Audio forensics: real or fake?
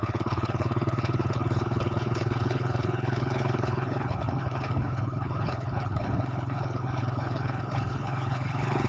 fake